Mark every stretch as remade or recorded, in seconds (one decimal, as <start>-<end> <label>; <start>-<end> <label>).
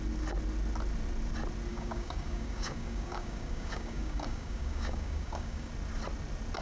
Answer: 0.0-1.7 recorded; 1.7-5.7 remade; 5.7-6.6 recorded